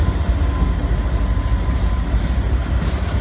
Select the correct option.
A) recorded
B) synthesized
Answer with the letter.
A